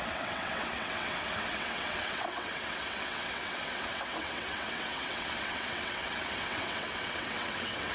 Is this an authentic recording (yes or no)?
no